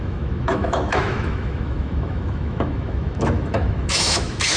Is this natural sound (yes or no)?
no